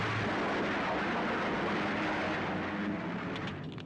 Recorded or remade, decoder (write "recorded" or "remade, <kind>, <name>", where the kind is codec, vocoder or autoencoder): recorded